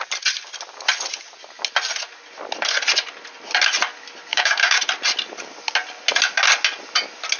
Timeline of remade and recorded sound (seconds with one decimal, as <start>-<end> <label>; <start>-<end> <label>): 0.0-4.3 recorded; 4.3-4.8 remade; 4.8-7.4 recorded